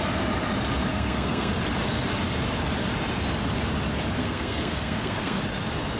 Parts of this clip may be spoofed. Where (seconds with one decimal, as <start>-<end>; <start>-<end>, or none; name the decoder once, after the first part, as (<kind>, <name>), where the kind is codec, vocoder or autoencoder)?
0.9-1.6 (codec, SNAC); 4.2-5.4